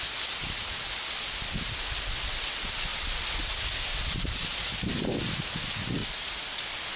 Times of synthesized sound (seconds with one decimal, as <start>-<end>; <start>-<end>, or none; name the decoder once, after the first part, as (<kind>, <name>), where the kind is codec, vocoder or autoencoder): 6.0-6.6 (vocoder, Vocos)